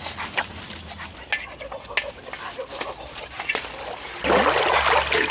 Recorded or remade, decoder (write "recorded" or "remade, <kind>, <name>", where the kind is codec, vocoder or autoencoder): recorded